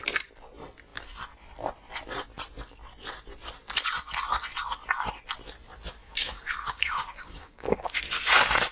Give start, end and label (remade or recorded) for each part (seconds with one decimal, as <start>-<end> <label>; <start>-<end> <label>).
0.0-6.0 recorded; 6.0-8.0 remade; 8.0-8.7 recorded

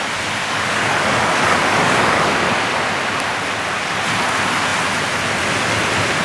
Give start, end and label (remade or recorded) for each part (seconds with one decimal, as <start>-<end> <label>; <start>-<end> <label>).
0.0-0.4 recorded; 0.4-2.5 remade; 2.5-6.2 recorded

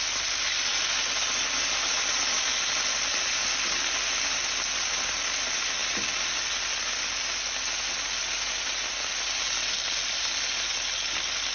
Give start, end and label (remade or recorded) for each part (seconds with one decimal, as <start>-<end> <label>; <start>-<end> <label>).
0.0-11.5 recorded

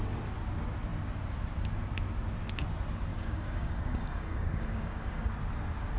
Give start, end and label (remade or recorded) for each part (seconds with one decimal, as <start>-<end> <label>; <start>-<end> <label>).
0.0-3.1 recorded; 3.1-5.3 remade; 5.3-6.0 recorded